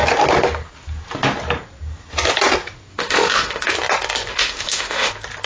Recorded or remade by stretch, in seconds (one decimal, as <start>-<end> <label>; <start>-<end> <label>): 0.0-2.9 recorded; 2.9-3.7 remade; 3.7-4.3 recorded; 4.3-5.1 remade; 5.1-5.5 recorded